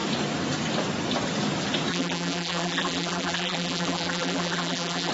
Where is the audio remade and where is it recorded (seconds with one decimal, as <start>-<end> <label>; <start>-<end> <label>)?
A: 0.0-1.9 recorded; 1.9-5.1 remade